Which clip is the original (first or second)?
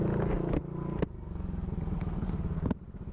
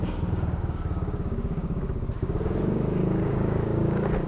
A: first